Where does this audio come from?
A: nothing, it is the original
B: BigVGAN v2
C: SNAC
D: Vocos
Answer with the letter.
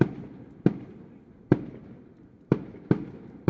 A